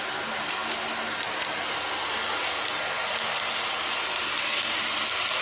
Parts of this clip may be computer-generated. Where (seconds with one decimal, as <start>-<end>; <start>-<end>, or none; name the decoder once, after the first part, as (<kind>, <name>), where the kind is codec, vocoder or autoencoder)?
none